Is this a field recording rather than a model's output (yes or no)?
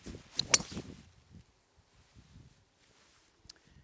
yes